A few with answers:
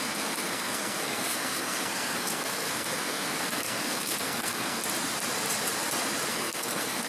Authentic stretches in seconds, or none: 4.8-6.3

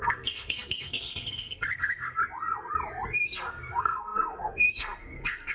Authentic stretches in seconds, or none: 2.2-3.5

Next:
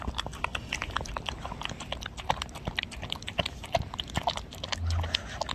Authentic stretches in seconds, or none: 0.0-5.5

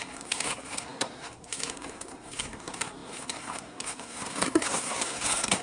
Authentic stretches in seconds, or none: none

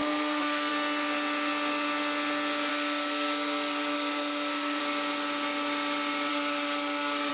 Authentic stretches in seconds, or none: 0.7-2.7; 4.8-6.3

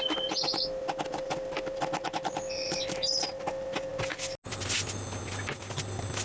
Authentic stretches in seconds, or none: 0.0-6.2

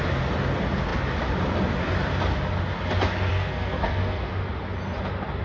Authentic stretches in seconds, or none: 0.0-3.3; 4.3-5.4